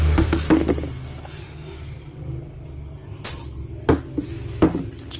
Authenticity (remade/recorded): recorded